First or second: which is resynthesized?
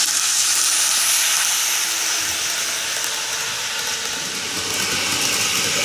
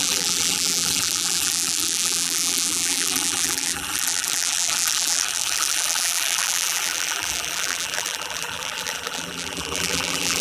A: second